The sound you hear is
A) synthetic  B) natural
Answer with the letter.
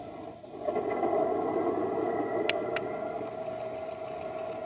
B